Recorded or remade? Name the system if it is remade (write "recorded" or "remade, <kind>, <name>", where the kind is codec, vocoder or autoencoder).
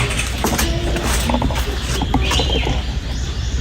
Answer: recorded